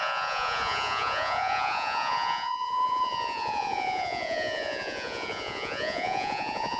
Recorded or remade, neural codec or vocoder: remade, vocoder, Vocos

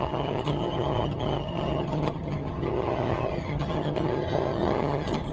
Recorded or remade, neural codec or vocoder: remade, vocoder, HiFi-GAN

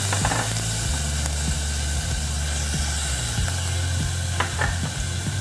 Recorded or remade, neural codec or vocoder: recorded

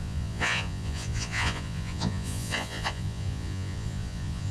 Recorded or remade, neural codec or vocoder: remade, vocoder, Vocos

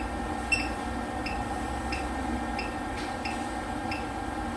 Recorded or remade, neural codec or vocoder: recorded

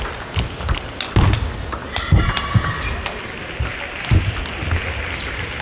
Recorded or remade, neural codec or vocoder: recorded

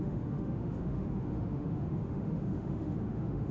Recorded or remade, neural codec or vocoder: remade, autoencoder, DAC-VAE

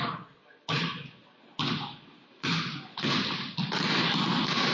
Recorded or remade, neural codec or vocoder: recorded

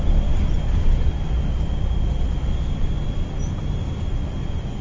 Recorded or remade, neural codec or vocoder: recorded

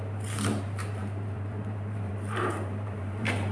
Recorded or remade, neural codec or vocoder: remade, vocoder, BigVGAN v2